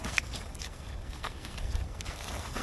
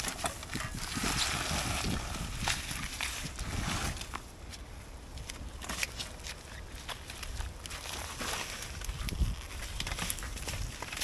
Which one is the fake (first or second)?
first